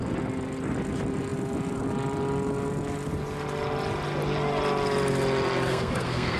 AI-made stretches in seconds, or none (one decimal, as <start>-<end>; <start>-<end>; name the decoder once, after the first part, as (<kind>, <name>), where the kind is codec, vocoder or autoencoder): 5.7-6.4 (codec, SNAC)